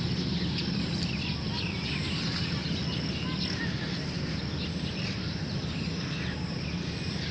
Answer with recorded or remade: remade